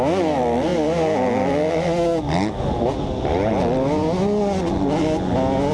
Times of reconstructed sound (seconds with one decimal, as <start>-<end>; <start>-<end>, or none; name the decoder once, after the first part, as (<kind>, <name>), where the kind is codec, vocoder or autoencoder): none